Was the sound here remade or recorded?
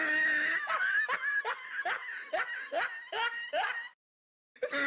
recorded